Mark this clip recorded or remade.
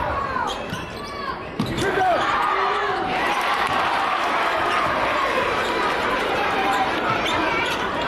remade